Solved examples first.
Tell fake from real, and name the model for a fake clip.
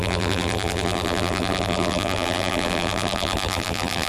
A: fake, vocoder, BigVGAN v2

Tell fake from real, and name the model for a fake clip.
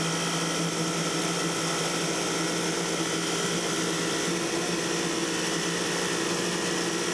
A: real